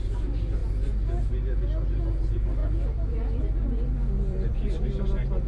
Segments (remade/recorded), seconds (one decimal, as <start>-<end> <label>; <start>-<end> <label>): 0.0-2.6 recorded; 2.6-3.4 remade; 3.4-4.0 recorded; 4.0-5.0 remade; 5.0-5.5 recorded